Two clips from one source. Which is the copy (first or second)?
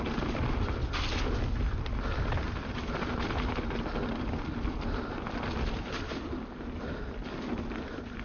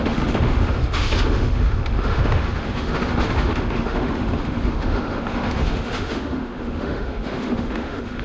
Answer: second